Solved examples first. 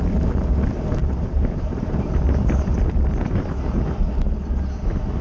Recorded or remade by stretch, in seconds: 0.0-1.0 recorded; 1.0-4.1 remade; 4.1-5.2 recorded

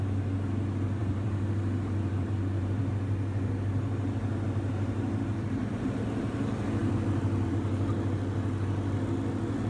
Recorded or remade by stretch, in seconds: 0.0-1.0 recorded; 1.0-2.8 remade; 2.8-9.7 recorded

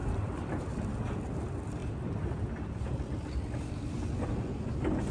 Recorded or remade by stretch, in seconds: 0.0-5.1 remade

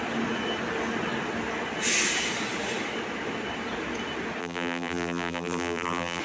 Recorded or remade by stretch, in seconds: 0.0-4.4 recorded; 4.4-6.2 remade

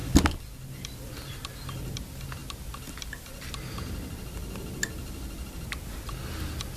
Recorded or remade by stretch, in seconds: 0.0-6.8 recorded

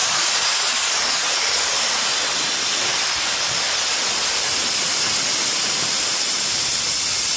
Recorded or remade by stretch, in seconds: 0.0-7.4 recorded

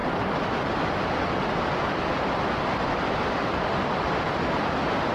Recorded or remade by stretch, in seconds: 0.0-3.0 recorded; 3.0-5.1 remade

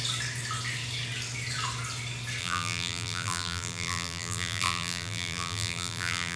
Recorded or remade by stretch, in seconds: 0.0-2.4 recorded; 2.4-6.4 remade